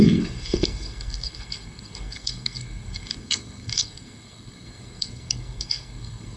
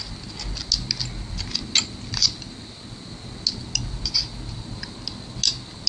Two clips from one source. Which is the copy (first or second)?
first